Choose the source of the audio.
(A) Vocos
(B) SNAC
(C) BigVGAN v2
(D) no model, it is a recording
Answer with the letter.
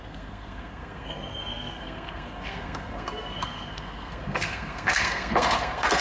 B